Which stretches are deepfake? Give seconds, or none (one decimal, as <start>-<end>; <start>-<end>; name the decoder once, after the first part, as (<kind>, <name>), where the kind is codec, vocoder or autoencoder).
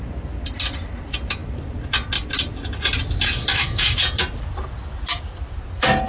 3.5-4.0 (autoencoder, DAC-VAE)